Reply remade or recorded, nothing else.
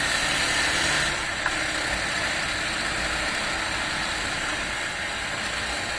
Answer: recorded